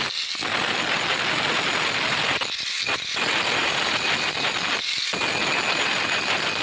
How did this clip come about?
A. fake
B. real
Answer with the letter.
B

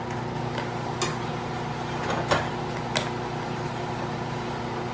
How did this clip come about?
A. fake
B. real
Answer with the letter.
B